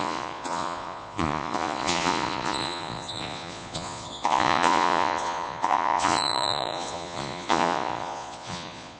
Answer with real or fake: fake